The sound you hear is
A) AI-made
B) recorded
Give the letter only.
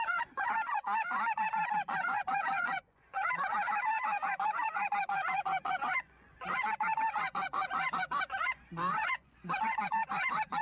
A